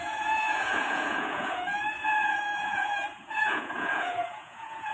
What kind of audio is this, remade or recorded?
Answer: remade